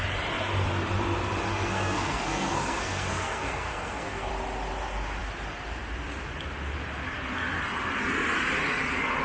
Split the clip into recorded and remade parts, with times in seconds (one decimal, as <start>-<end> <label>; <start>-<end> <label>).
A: 0.0-1.5 recorded; 1.5-4.3 remade; 4.3-9.2 recorded